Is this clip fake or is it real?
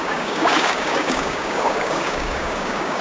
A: fake